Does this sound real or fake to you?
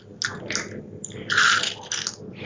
real